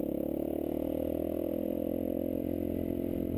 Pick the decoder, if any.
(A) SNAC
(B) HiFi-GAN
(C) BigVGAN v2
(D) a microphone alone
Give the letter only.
D